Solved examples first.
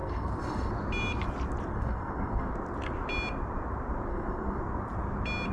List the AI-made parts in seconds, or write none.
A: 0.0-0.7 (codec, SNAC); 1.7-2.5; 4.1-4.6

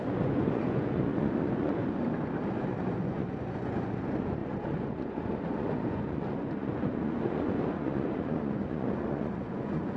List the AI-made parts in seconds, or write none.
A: 0.0-1.8 (vocoder, Vocos); 2.7-10.0

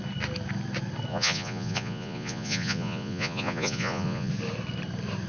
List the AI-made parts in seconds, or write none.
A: 1.1-4.3 (vocoder, Vocos)

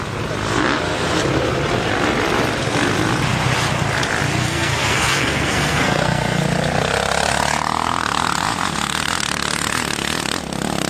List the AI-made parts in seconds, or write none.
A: 4.4-6.4 (codec, SNAC)

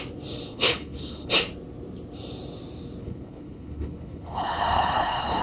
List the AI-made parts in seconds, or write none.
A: 0.5-1.3 (codec, HILCodec); 3.0-5.4

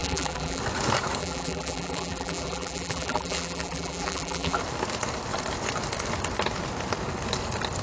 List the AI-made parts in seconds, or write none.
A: 0.0-0.6 (vocoder, BigVGAN v2); 1.2-4.6

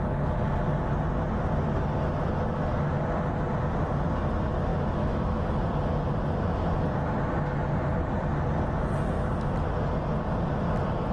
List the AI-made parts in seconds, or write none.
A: 4.7-5.4 (autoencoder, DAC-VAE)

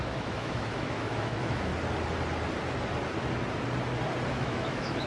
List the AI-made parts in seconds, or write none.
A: 0.0-1.7 (autoencoder, DAC-VAE); 4.3-5.1